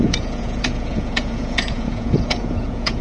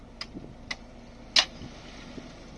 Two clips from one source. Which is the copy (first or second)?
first